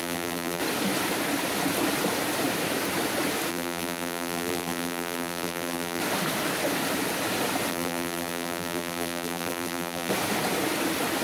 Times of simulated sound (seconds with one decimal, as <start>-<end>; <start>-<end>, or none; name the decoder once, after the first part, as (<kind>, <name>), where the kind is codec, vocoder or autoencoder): 0.0-0.6 (vocoder, BigVGAN v2); 3.5-6.0; 7.7-10.1